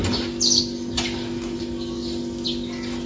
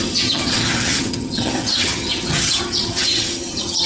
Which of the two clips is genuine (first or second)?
first